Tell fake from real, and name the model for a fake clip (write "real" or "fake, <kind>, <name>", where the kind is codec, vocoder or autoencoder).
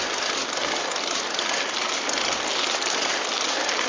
real